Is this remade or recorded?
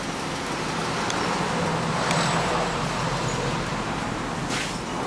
recorded